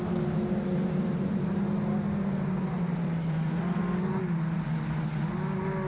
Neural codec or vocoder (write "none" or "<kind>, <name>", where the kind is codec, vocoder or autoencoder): none